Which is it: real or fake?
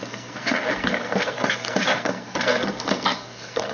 fake